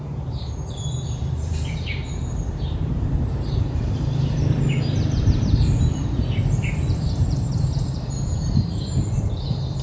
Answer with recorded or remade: remade